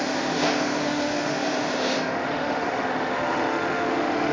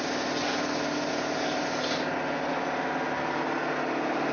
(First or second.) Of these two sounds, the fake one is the first